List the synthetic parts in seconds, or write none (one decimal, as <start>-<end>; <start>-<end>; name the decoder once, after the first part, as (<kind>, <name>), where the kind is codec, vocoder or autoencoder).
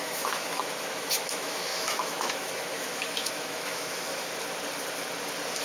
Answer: 0.0-4.1 (autoencoder, DAC-VAE)